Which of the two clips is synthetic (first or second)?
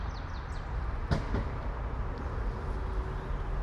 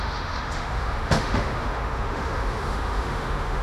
second